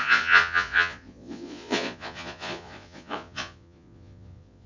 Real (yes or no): no